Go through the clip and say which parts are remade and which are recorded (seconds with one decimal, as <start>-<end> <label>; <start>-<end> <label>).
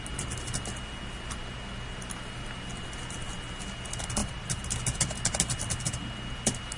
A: 0.0-4.2 recorded; 4.2-4.7 remade; 4.7-6.8 recorded